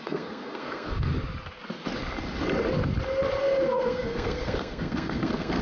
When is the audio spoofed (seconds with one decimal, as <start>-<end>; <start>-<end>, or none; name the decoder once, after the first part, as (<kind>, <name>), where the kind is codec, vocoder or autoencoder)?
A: 0.0-1.1 (codec, SNAC); 3.4-5.6

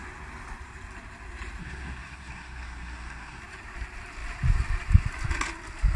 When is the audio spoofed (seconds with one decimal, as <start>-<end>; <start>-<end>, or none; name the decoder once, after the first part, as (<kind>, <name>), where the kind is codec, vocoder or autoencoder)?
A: 1.6-3.4 (codec, SNAC)

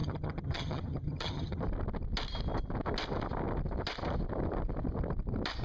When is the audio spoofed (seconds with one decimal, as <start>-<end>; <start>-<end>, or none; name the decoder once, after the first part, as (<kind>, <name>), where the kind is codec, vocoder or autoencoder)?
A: 0.0-1.6 (vocoder, HiFi-GAN)

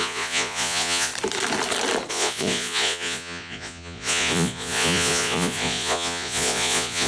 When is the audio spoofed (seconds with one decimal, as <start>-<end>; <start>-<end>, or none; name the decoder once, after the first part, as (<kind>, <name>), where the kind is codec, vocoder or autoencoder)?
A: 0.0-1.1 (vocoder, Vocos); 2.1-7.1

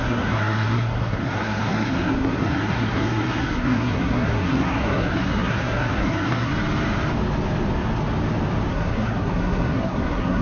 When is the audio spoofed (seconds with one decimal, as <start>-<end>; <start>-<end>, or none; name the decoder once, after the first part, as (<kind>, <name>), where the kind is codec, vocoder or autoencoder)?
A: 0.0-6.5 (codec, SNAC); 8.7-10.4

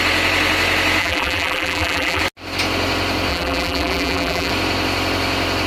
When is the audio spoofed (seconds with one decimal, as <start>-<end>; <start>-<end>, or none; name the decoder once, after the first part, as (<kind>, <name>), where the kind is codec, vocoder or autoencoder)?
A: 1.0-2.2 (vocoder, BigVGAN v2); 3.3-4.5

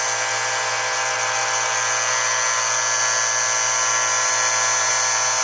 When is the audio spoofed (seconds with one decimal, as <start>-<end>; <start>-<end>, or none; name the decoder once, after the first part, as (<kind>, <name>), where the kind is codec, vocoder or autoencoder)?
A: none

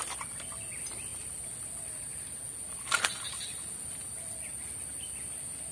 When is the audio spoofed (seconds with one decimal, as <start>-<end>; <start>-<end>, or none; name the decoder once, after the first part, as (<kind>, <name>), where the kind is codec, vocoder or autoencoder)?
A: none